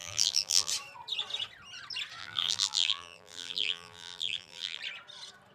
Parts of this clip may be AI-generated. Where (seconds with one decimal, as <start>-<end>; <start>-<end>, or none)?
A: 0.0-0.7; 2.2-4.8